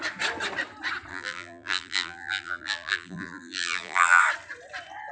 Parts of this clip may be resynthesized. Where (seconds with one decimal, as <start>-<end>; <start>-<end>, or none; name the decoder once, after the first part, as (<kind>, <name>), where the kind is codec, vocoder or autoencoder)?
1.1-4.2 (vocoder, BigVGAN v2)